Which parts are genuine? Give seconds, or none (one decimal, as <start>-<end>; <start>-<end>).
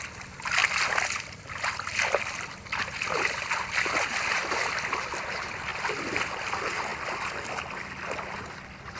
0.0-0.6; 4.7-5.7; 6.3-9.0